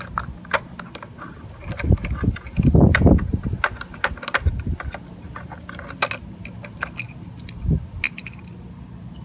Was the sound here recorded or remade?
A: recorded